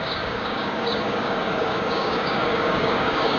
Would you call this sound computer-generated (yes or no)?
yes